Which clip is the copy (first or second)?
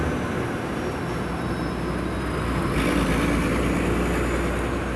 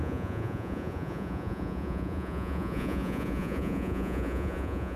second